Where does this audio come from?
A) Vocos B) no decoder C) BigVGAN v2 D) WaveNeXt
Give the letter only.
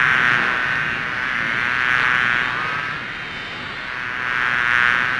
B